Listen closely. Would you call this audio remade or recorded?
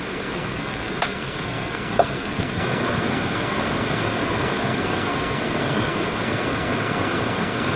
remade